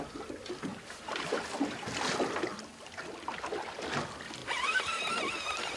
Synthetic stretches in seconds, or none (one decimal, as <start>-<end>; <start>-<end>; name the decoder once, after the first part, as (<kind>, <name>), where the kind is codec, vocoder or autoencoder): 0.7-1.3 (vocoder, BigVGAN v2); 4.4-5.1